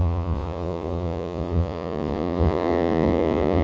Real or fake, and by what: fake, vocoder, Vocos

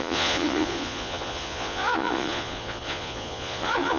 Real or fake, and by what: fake, vocoder, Vocos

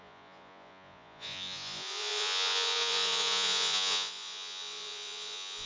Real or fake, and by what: fake, vocoder, Vocos